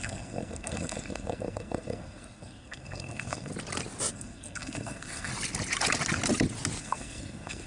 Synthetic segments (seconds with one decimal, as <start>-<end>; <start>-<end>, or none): 0.0-3.5; 4.1-5.3; 6.8-7.7